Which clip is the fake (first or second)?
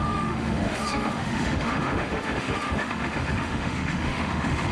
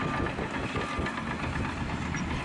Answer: first